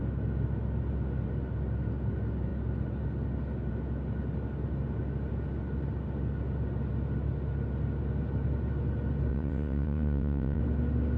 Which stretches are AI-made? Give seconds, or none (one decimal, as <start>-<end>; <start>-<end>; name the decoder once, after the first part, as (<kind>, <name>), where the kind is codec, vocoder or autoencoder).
9.3-10.6 (vocoder, WaveNeXt)

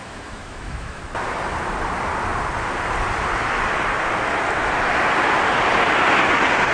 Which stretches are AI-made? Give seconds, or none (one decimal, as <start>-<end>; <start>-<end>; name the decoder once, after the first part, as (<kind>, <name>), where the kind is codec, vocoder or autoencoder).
0.0-1.0 (autoencoder, DAC-VAE)

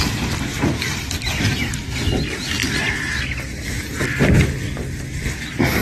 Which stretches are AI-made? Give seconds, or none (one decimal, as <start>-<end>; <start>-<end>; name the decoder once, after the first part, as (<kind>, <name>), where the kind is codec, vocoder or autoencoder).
0.5-1.4 (vocoder, BigVGAN v2); 2.6-4.2

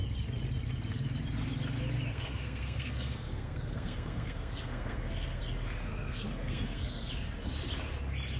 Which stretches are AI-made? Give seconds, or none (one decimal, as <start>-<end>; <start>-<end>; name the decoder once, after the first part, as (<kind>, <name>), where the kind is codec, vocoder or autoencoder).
2.1-5.4 (codec, SNAC); 5.9-7.1

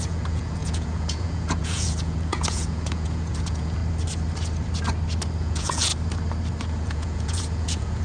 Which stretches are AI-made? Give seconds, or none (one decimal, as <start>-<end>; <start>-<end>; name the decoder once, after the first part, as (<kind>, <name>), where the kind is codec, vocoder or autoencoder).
0.0-3.8 (vocoder, Vocos); 5.4-5.9; 6.7-8.0